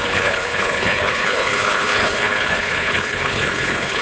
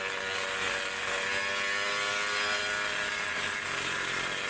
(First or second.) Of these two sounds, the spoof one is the first